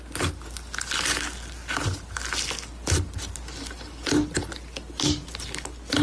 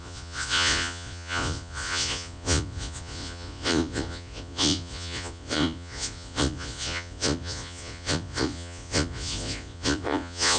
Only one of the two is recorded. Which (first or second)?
first